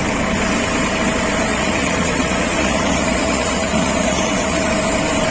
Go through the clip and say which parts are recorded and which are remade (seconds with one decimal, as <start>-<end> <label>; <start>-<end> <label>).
0.0-1.5 recorded; 1.5-4.7 remade; 4.7-5.3 recorded